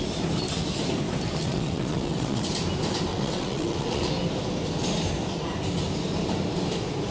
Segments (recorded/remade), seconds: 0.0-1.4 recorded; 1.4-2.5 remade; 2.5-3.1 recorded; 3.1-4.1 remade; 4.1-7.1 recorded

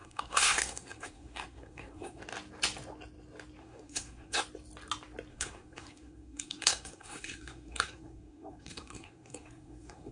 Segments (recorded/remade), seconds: 0.0-2.2 remade; 2.2-3.6 recorded; 3.6-4.4 remade; 4.4-5.3 recorded; 5.3-10.1 remade

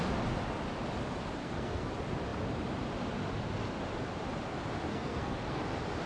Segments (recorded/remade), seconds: 0.0-1.4 recorded; 1.4-1.9 remade; 1.9-4.9 recorded; 4.9-5.6 remade; 5.6-6.1 recorded

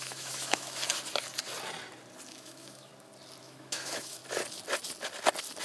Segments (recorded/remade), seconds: 0.0-0.8 remade; 0.8-2.3 recorded; 2.3-2.9 remade; 2.9-3.4 recorded; 3.4-4.2 remade; 4.2-5.6 recorded

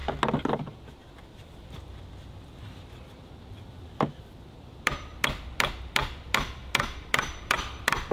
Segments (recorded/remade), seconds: 0.0-0.5 recorded; 0.5-8.1 remade

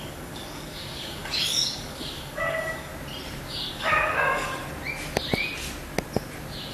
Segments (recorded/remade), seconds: 0.0-2.9 remade; 2.9-3.5 recorded; 3.5-4.5 remade; 4.5-6.7 recorded

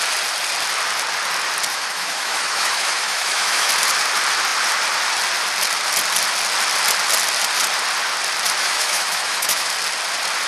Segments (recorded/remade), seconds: 0.0-1.7 recorded; 1.7-3.7 remade; 3.7-8.6 recorded; 8.6-9.7 remade; 9.7-10.5 recorded